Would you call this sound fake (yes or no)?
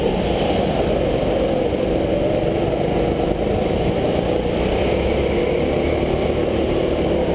no